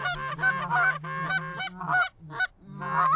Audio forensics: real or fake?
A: real